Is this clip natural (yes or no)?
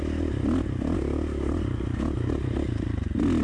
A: yes